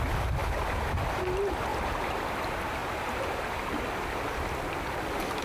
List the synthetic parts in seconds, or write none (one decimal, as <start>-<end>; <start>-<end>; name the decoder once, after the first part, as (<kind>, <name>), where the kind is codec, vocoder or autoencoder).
0.4-0.9 (vocoder, BigVGAN v2); 1.7-2.4; 2.8-3.7